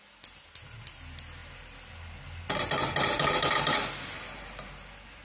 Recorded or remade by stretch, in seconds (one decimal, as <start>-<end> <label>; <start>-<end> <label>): 0.0-5.2 recorded